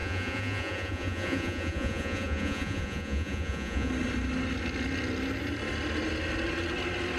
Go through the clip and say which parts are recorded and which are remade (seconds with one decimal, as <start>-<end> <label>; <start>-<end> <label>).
0.0-3.9 remade; 3.9-7.2 recorded